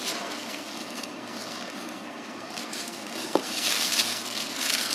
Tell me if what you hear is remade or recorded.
remade